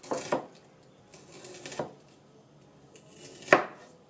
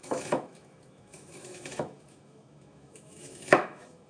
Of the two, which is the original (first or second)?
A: first